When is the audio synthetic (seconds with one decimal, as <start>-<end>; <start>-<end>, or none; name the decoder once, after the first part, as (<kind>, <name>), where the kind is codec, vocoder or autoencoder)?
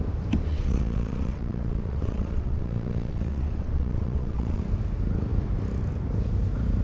0.5-4.6 (vocoder, WaveNeXt)